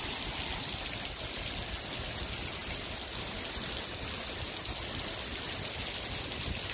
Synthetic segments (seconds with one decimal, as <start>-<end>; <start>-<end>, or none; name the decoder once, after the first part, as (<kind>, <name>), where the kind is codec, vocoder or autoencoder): none